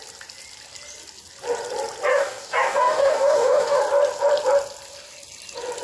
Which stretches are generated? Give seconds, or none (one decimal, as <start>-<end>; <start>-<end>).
2.1-3.8